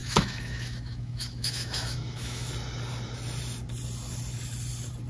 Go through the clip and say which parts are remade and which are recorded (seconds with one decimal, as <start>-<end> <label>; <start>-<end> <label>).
0.0-2.5 remade; 2.5-5.1 recorded